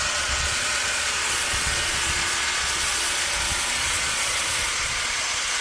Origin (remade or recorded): remade